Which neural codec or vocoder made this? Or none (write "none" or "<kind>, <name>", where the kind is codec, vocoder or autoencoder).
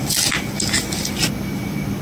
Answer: none